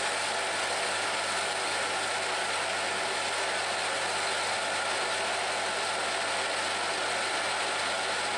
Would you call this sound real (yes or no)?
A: yes